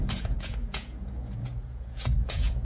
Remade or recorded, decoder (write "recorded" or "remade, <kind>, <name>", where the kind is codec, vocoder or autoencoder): remade, vocoder, Vocos